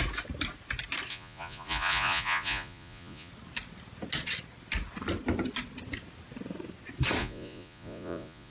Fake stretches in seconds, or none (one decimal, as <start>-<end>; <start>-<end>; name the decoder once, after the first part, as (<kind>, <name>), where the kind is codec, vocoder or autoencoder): 1.1-3.3 (vocoder, Vocos); 7.2-8.5